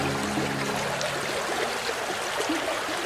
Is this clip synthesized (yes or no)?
no